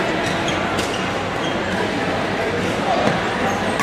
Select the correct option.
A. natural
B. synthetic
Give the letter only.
A